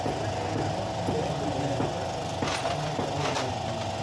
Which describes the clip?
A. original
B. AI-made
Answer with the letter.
A